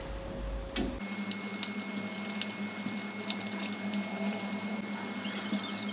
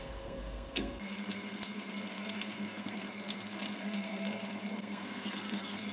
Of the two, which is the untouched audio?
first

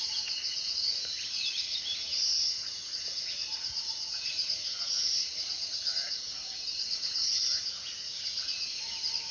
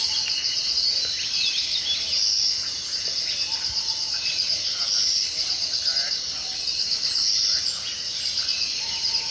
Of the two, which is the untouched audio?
second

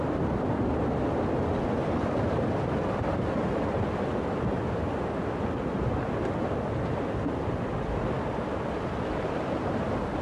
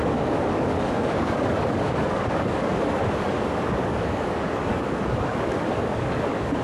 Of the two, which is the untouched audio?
first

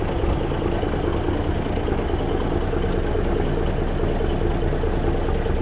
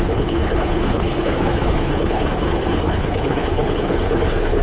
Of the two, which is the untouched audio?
first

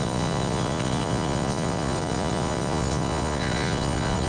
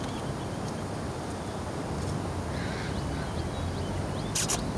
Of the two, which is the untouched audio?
second